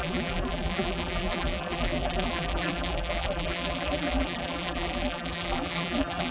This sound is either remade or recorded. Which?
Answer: remade